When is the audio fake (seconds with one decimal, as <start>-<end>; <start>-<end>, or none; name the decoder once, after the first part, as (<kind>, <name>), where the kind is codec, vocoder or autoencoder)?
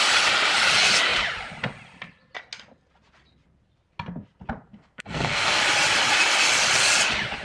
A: 4.7-5.6 (codec, SNAC)